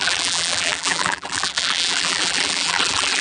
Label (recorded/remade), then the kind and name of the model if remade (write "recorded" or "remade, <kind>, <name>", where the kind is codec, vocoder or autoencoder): remade, vocoder, BigVGAN v2